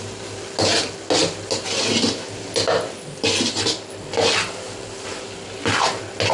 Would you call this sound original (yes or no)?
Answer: yes